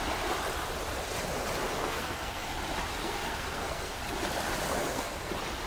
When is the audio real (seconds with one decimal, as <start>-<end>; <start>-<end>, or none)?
0.0-1.8; 2.5-3.0; 4.0-4.8; 5.3-5.7